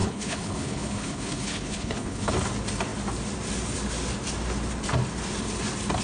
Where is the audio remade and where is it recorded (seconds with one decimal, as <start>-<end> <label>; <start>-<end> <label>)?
0.0-2.3 remade; 2.3-6.0 recorded